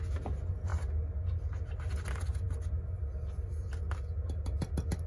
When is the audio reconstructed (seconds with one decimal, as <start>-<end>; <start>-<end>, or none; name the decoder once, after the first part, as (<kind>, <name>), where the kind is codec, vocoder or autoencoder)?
none